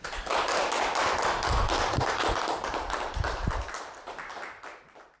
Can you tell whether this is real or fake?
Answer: real